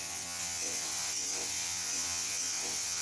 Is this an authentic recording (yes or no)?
no